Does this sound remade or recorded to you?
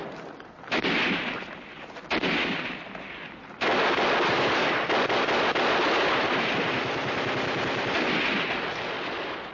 recorded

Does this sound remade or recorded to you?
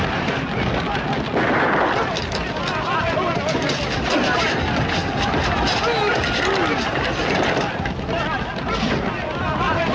recorded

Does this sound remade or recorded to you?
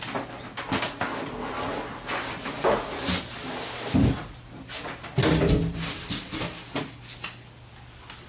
recorded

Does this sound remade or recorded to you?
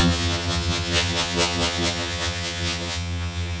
remade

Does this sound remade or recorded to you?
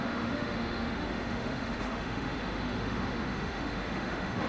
remade